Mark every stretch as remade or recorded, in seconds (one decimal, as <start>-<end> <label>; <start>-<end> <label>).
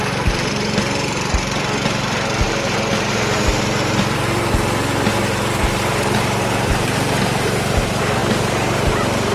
0.0-9.3 remade